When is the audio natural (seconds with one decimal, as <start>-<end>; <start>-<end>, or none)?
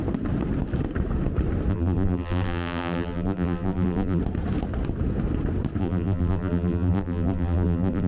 0.0-1.7; 4.2-5.8